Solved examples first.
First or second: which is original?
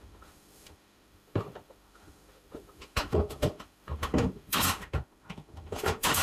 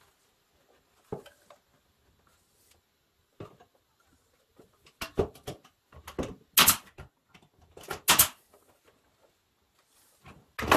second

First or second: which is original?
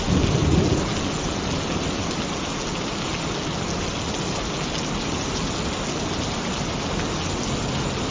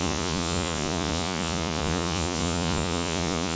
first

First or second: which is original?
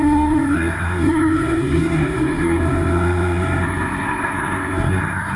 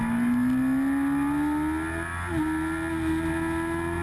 second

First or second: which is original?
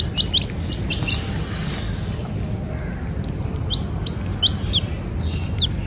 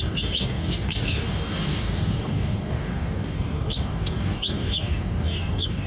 first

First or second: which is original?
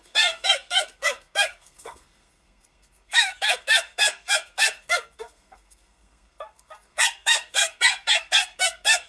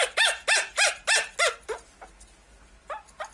second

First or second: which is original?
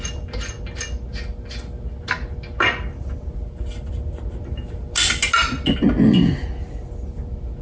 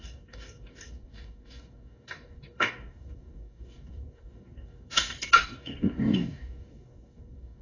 first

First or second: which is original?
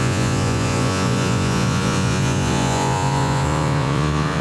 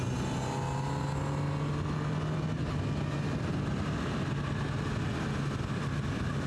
second